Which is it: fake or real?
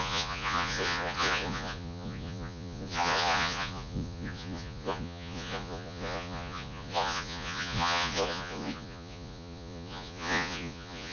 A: fake